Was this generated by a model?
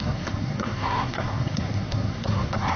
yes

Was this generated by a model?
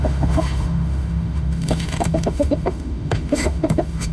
yes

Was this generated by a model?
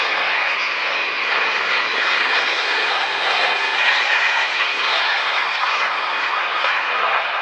yes